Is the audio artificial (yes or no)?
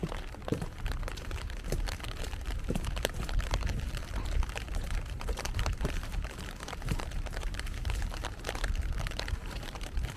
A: yes